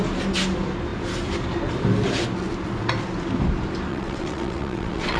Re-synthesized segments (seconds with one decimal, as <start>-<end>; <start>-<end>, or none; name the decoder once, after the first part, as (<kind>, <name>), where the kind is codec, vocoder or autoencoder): 3.9-5.2 (vocoder, WaveNeXt)